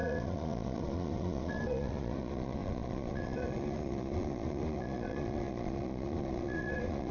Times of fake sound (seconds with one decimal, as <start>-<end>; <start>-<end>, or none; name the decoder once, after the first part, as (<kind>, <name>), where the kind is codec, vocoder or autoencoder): 0.0-7.1 (vocoder, Vocos)